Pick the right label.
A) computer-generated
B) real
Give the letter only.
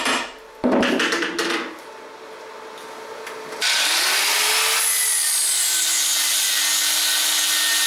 B